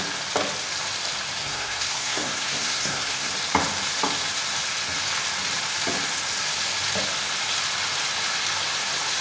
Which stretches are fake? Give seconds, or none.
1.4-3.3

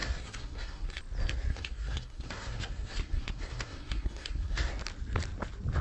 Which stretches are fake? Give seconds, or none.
0.0-1.0; 1.5-4.7

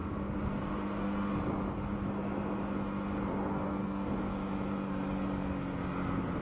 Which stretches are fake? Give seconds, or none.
0.0-1.3; 3.3-4.1

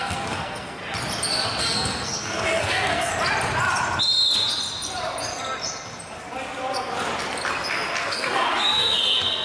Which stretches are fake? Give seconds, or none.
0.0-0.8; 1.6-3.1; 8.1-9.4